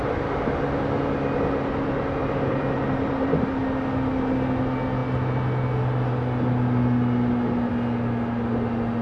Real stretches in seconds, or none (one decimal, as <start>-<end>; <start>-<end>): 0.5-2.2; 3.3-9.0